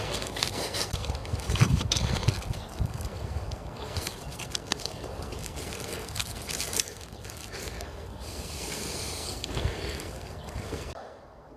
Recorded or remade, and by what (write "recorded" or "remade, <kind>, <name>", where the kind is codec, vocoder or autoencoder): remade, codec, SNAC